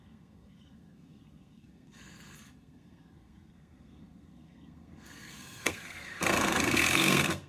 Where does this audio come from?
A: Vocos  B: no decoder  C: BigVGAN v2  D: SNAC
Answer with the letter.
D